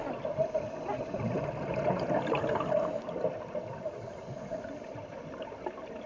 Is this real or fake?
fake